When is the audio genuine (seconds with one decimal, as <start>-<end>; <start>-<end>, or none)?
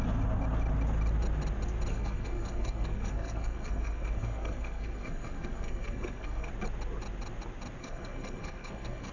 0.0-1.9; 6.5-7.8